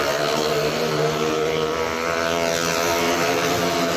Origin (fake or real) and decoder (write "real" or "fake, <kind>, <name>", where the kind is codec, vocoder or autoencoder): real